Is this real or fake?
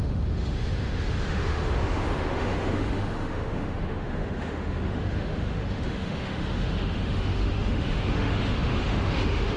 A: fake